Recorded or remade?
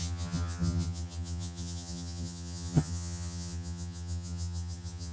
remade